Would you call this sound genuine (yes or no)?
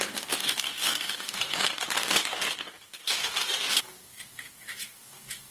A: no